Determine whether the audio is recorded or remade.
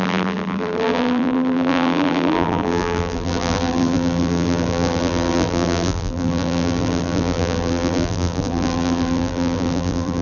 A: remade